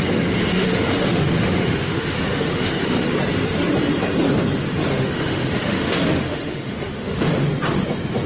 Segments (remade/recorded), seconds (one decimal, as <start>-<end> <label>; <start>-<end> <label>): 0.0-0.5 recorded; 0.5-3.1 remade; 3.1-4.9 recorded; 4.9-7.3 remade; 7.3-8.3 recorded

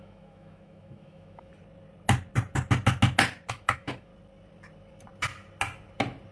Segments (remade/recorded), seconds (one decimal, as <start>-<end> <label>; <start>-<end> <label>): 0.0-1.5 remade; 1.5-3.5 recorded; 3.5-4.1 remade; 4.1-6.3 recorded

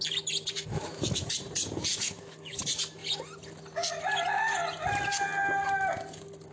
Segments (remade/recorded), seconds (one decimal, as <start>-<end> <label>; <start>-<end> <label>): 0.0-0.7 recorded; 0.7-1.3 remade; 1.3-1.9 recorded; 1.9-2.6 remade; 2.6-6.5 recorded

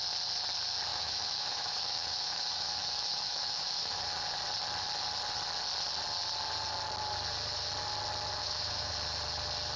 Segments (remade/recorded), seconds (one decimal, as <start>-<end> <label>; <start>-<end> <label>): 0.0-0.9 recorded; 0.9-4.0 remade; 4.0-8.4 recorded; 8.4-8.9 remade; 8.9-9.8 recorded

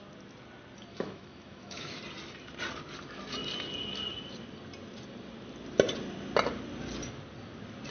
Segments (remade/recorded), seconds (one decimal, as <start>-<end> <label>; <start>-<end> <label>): 0.0-0.9 recorded; 0.9-2.0 remade; 2.0-7.9 recorded

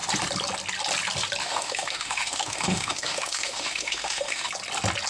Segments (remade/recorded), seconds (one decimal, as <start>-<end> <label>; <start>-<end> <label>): 0.0-1.4 recorded; 1.4-4.5 remade; 4.5-5.1 recorded

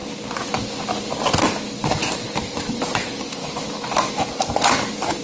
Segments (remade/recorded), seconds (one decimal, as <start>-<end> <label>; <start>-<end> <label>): 0.0-3.4 recorded; 3.4-4.3 remade; 4.3-5.2 recorded